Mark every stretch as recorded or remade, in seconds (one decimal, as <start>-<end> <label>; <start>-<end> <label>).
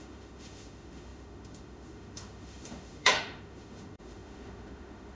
0.0-5.2 remade